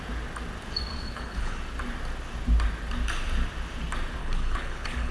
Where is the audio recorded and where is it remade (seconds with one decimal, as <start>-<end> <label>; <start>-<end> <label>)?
0.0-0.9 recorded; 0.9-1.6 remade; 1.6-4.2 recorded; 4.2-5.1 remade